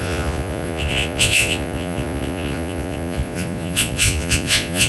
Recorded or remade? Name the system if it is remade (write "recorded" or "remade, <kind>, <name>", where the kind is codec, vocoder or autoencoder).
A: remade, vocoder, Vocos